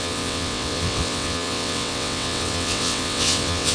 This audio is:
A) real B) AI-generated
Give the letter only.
B